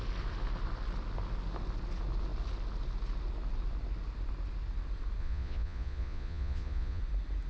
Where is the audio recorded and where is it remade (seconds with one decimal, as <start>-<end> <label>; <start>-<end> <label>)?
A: 0.0-5.2 recorded; 5.2-7.0 remade; 7.0-7.5 recorded

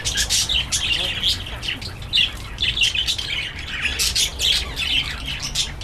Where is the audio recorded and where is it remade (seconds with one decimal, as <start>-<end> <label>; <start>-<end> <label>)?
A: 0.0-5.8 recorded

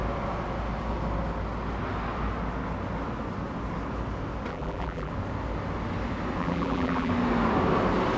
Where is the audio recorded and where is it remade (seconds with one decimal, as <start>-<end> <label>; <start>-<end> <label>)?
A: 0.0-4.5 recorded; 4.5-5.1 remade; 5.1-6.4 recorded; 6.4-7.1 remade; 7.1-8.2 recorded

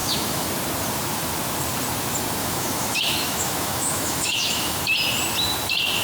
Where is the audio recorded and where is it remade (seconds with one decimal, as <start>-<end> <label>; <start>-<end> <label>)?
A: 0.0-0.5 remade; 0.5-2.4 recorded; 2.4-4.8 remade; 4.8-6.0 recorded